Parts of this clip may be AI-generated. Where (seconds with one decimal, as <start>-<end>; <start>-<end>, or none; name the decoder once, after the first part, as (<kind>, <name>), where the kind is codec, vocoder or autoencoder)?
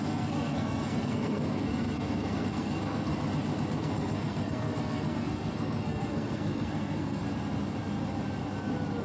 0.0-3.1 (codec, SNAC); 3.8-7.2